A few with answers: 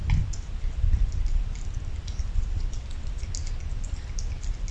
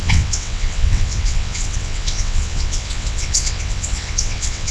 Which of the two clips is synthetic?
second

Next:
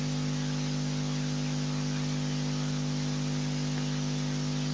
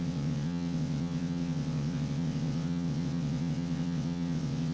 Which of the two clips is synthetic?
second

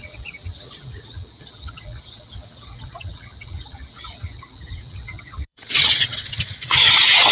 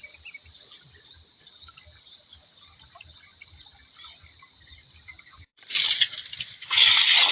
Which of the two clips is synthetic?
first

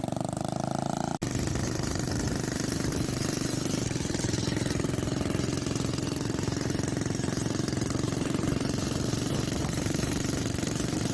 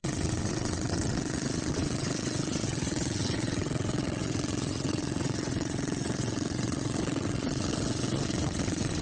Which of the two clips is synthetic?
second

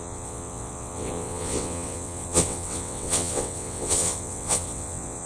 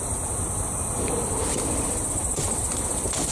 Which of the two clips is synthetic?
first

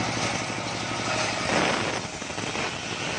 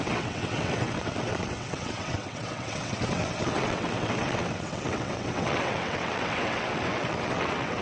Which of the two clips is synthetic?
second